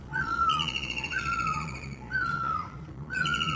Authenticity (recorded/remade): remade